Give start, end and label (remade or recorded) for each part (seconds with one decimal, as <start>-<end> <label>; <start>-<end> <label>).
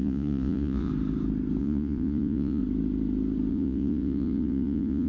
0.0-0.9 remade; 0.9-1.6 recorded; 1.6-2.6 remade; 2.6-3.5 recorded; 3.5-5.1 remade